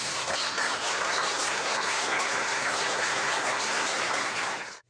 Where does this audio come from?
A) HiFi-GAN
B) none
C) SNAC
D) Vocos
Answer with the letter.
C